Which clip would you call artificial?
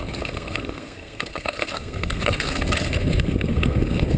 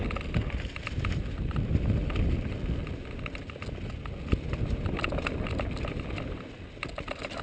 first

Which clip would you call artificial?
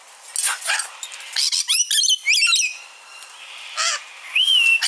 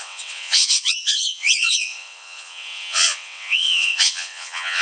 second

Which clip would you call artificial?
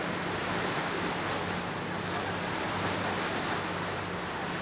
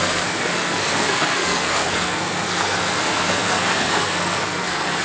second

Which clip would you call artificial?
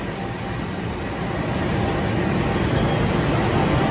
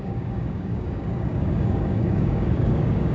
second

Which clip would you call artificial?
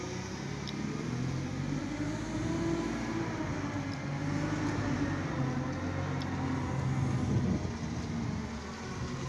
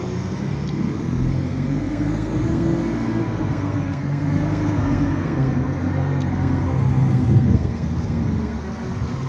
second